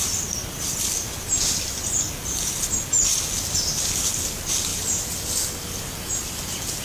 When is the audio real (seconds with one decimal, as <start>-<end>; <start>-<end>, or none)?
0.0-6.8